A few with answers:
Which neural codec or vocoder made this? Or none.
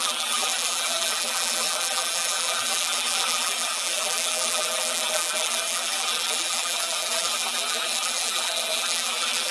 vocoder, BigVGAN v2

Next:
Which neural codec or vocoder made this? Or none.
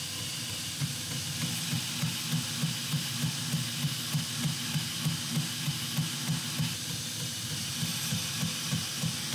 none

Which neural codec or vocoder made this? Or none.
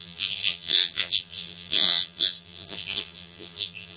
vocoder, BigVGAN v2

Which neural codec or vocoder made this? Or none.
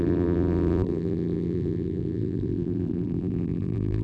vocoder, BigVGAN v2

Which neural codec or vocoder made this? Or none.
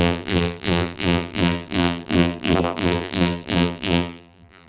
vocoder, BigVGAN v2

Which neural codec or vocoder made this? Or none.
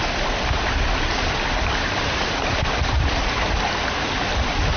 vocoder, BigVGAN v2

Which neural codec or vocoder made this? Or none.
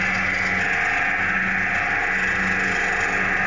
none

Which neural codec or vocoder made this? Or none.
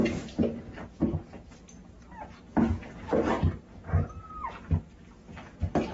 none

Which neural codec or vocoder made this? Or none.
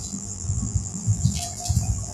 vocoder, BigVGAN v2